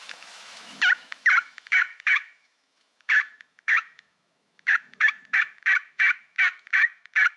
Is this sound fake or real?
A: fake